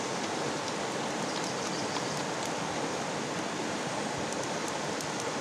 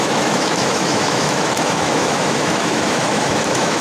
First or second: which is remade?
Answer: second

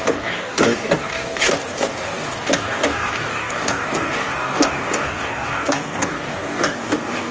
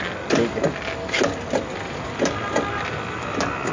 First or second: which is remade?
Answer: first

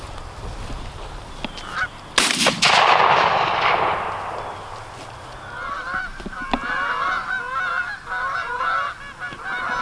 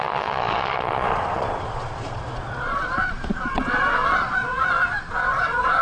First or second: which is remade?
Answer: second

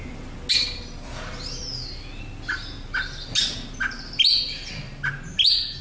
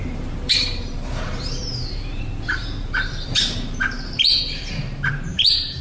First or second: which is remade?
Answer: second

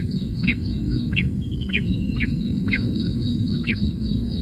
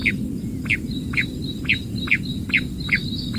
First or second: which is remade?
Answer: first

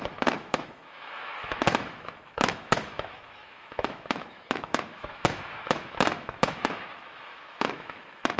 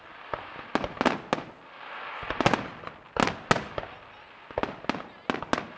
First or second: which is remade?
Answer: first